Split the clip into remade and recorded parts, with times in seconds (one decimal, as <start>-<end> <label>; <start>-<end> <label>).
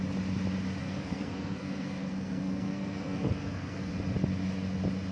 0.0-0.8 recorded; 0.8-3.9 remade; 3.9-5.1 recorded